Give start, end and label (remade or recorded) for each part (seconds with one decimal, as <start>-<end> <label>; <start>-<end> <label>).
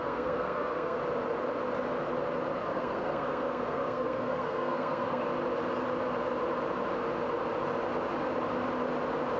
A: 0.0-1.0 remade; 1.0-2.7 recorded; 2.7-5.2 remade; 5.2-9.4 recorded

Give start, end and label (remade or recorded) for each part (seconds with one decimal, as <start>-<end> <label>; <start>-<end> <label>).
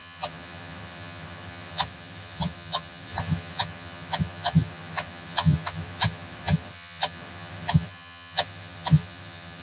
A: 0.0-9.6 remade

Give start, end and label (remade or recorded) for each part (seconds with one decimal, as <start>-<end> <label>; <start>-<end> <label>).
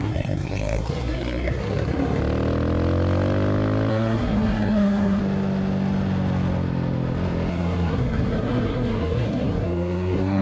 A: 0.0-2.2 remade; 2.2-3.9 recorded; 3.9-5.2 remade; 5.2-7.5 recorded; 7.5-10.4 remade